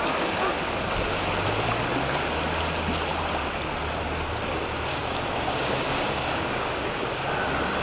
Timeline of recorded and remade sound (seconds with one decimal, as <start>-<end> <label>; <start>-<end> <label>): 0.0-4.9 recorded; 4.9-7.2 remade; 7.2-7.8 recorded